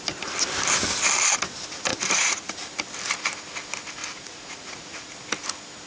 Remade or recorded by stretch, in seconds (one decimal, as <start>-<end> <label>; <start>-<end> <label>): 0.0-1.9 recorded; 1.9-2.5 remade; 2.5-4.0 recorded; 4.0-5.1 remade; 5.1-5.9 recorded